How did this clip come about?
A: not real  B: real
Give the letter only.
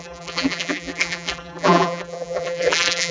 A